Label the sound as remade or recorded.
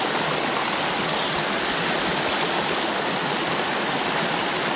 recorded